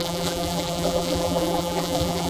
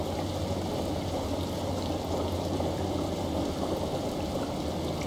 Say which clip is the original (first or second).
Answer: second